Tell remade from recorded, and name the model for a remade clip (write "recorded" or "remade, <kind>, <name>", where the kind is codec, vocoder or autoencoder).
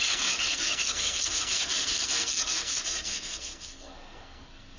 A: remade, codec, SNAC